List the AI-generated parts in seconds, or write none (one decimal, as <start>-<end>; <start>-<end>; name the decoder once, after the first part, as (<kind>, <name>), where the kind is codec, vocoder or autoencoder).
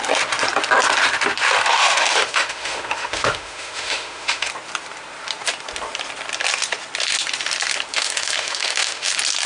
1.8-4.5 (autoencoder, DAC-VAE); 7.9-9.1